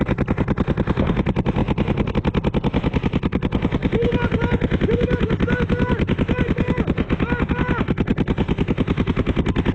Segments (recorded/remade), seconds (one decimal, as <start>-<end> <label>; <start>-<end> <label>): 0.0-9.7 recorded